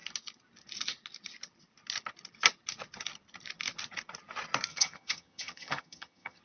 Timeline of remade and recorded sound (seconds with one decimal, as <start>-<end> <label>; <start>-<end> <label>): 0.0-4.7 recorded; 4.7-6.4 remade